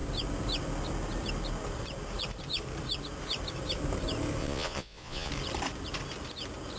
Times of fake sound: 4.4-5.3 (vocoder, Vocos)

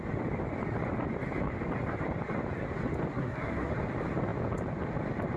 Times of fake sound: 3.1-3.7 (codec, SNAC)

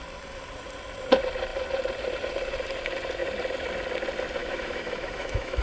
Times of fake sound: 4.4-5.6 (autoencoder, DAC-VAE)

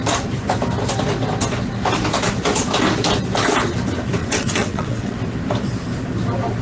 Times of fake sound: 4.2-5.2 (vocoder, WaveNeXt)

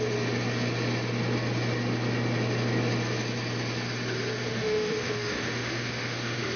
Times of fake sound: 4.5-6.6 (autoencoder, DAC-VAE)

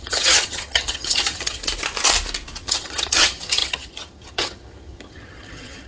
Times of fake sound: 0.0-1.6 (vocoder, HiFi-GAN); 2.6-5.9

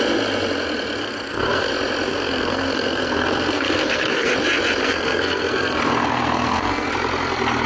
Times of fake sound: 1.0-1.7 (codec, SNAC); 2.1-4.3; 4.8-6.9

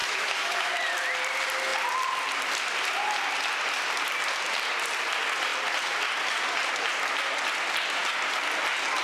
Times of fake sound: 0.0-0.7 (autoencoder, DAC-VAE)